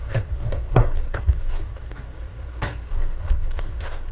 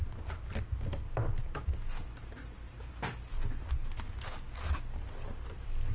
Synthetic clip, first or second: first